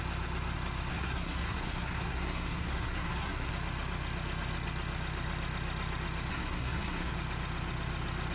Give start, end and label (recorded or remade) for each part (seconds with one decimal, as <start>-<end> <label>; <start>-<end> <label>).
0.0-0.9 recorded; 0.9-3.5 remade; 3.5-6.3 recorded; 6.3-7.1 remade; 7.1-8.3 recorded